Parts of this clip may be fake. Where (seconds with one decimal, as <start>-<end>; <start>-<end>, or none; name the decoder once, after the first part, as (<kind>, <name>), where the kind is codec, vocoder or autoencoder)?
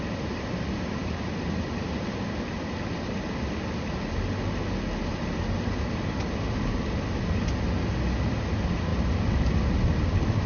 none